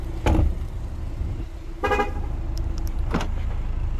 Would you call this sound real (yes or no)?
yes